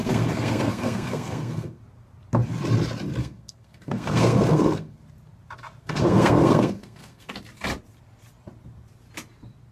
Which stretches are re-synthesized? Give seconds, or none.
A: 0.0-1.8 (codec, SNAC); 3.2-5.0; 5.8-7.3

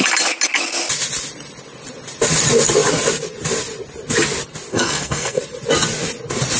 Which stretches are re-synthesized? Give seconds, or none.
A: 4.7-5.4 (codec, SNAC)

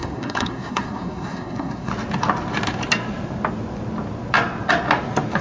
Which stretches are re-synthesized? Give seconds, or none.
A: 0.0-1.9 (codec, SNAC)

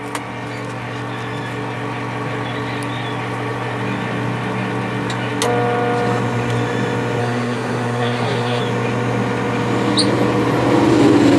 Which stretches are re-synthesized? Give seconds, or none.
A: 7.2-8.6 (codec, SNAC)

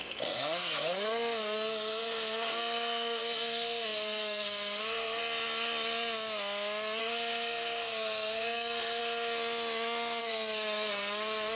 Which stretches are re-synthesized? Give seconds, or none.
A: 0.0-5.2 (codec, SNAC); 7.0-9.0; 10.2-11.6

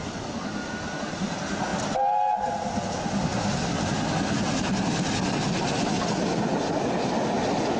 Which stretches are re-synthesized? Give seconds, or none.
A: none